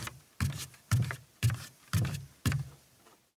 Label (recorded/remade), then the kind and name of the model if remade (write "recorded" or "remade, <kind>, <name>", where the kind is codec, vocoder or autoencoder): recorded